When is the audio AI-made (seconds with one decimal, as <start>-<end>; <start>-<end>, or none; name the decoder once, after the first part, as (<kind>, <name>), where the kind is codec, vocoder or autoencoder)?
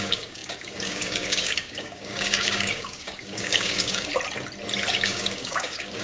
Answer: 0.0-4.1 (codec, DAC); 4.9-6.0